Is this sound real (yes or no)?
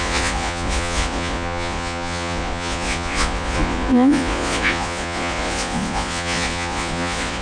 no